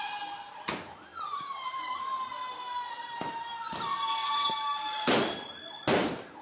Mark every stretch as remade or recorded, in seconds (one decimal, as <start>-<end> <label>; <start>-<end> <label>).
0.0-6.4 recorded